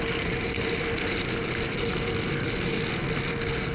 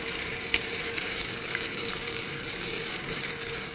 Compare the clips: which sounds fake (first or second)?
second